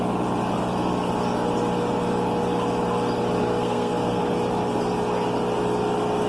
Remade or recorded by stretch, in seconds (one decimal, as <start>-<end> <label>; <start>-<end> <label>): 0.0-3.4 recorded; 3.4-4.2 remade; 4.2-6.3 recorded